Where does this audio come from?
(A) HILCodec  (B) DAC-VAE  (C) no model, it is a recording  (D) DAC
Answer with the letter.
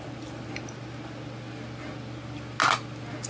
C